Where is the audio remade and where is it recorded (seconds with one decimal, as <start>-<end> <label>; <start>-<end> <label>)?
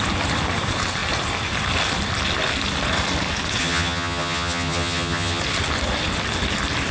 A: 0.0-3.6 recorded; 3.6-5.4 remade; 5.4-6.9 recorded